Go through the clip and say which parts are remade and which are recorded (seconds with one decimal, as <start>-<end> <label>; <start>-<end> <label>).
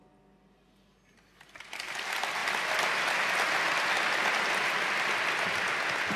0.0-6.2 recorded